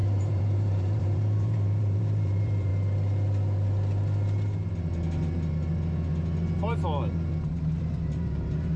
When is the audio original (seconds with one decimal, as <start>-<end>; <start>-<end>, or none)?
2.7-7.8